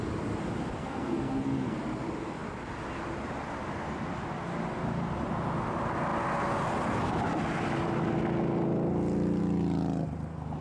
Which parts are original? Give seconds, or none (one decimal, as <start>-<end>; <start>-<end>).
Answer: 0.0-0.8; 1.8-10.6